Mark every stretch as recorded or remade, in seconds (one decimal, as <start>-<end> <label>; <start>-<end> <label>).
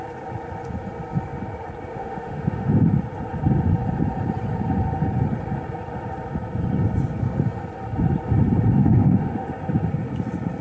0.0-1.9 recorded; 1.9-2.7 remade; 2.7-8.8 recorded; 8.8-9.5 remade; 9.5-10.6 recorded